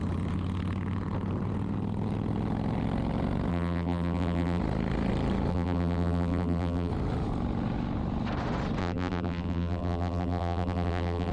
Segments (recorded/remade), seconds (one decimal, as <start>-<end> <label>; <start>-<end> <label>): 0.0-3.5 recorded; 3.5-4.6 remade; 4.6-5.5 recorded; 5.5-6.9 remade; 6.9-8.8 recorded; 8.8-11.3 remade